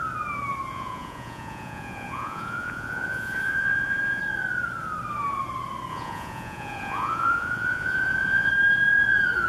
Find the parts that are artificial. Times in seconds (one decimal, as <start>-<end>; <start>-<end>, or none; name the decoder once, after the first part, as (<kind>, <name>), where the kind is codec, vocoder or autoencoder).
0.7-4.2 (vocoder, Vocos); 5.9-8.5